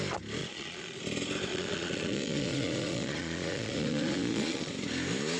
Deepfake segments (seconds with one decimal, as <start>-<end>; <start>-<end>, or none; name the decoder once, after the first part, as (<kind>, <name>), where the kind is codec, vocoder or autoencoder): 0.4-1.0 (vocoder, Vocos); 1.5-4.7